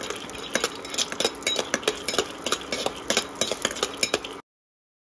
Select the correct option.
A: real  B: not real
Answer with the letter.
A